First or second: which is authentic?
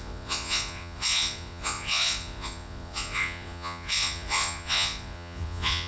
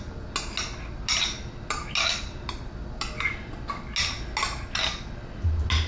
second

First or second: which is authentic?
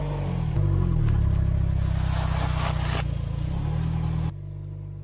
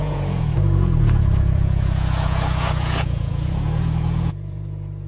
first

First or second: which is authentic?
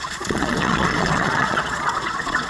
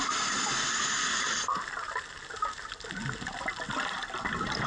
second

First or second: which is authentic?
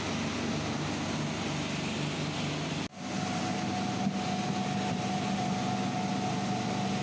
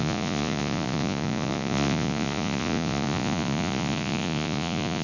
first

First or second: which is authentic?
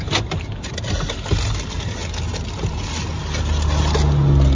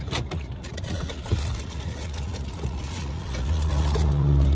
first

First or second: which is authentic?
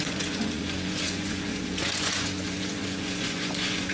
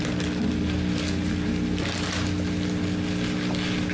second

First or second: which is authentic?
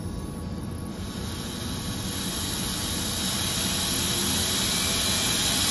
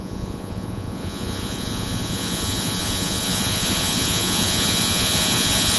first